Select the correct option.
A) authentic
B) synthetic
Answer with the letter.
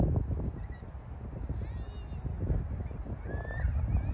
A